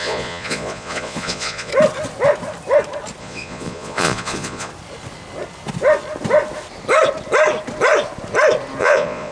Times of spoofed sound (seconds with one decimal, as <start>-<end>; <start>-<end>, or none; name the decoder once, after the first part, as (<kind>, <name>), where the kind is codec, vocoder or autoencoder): 0.0-1.7 (vocoder, Vocos); 3.2-4.7; 8.8-9.3